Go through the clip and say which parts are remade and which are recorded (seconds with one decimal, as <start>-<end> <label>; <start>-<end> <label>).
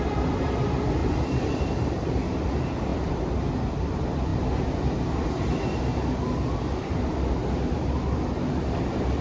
0.0-1.0 recorded; 1.0-1.9 remade; 1.9-2.9 recorded; 2.9-3.7 remade; 3.7-9.2 recorded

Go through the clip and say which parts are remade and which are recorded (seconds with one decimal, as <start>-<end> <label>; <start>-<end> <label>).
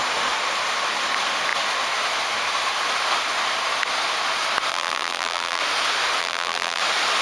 0.0-4.7 recorded; 4.7-5.6 remade; 5.6-6.2 recorded; 6.2-6.8 remade; 6.8-7.2 recorded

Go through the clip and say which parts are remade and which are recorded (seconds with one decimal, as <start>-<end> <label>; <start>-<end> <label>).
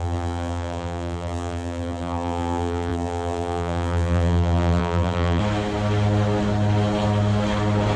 0.0-5.4 remade; 5.4-8.0 recorded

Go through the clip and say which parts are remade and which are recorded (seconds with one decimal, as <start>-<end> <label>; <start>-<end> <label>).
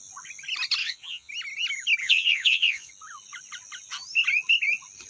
0.0-0.8 recorded; 0.8-1.3 remade; 1.3-2.0 recorded; 2.0-2.9 remade; 2.9-5.1 recorded